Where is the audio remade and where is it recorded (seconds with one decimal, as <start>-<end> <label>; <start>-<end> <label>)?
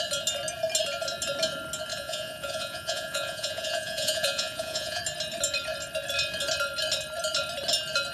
0.0-1.9 recorded; 1.9-5.0 remade; 5.0-8.1 recorded